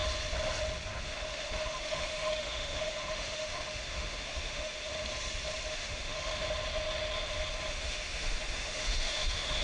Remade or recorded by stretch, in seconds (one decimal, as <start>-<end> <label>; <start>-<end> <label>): 0.0-1.0 recorded; 1.0-4.9 remade; 4.9-5.7 recorded; 5.7-6.3 remade; 6.3-7.7 recorded; 7.7-9.6 remade